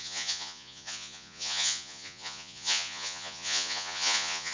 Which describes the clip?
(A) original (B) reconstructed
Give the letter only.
B